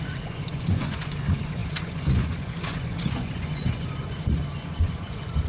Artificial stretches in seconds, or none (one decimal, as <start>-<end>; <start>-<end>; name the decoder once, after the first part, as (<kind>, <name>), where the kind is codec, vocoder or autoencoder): 0.0-5.5 (vocoder, Vocos)